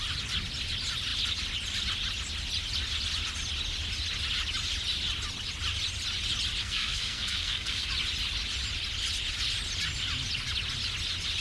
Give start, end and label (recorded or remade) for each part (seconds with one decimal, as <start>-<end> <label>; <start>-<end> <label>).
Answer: 0.0-6.6 recorded; 6.6-7.9 remade; 7.9-11.4 recorded